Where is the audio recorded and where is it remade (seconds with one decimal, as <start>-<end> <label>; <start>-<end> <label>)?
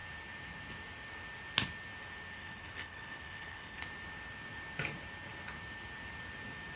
0.0-2.4 recorded; 2.4-3.8 remade; 3.8-6.8 recorded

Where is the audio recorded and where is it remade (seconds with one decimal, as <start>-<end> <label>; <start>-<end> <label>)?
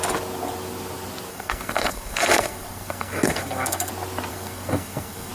0.0-1.3 recorded; 1.3-3.9 remade; 3.9-4.3 recorded; 4.3-5.3 remade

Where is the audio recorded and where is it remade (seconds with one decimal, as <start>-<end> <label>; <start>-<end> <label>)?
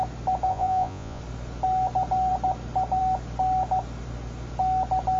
0.0-0.5 recorded; 0.5-1.2 remade; 1.2-5.2 recorded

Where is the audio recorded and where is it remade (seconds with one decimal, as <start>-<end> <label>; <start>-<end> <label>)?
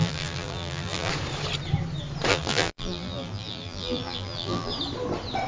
0.0-1.1 remade; 1.1-2.3 recorded; 2.3-4.7 remade; 4.7-5.5 recorded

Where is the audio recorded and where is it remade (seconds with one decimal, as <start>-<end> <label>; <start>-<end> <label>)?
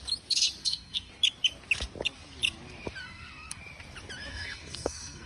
0.0-0.6 recorded; 0.6-1.1 remade; 1.1-3.0 recorded; 3.0-3.6 remade; 3.6-4.3 recorded; 4.3-5.3 remade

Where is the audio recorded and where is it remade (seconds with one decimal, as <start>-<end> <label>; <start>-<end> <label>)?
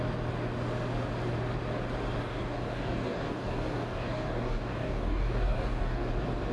0.0-2.2 recorded; 2.2-6.1 remade; 6.1-6.5 recorded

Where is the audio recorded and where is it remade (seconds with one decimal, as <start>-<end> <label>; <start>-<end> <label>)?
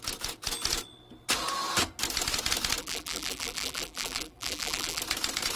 0.0-2.8 recorded; 2.8-5.0 remade; 5.0-5.6 recorded